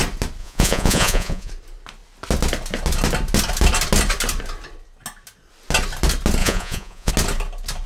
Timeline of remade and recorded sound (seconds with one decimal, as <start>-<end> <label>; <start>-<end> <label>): 0.0-0.4 recorded; 0.4-1.5 remade; 1.5-6.4 recorded; 6.4-7.1 remade; 7.1-7.9 recorded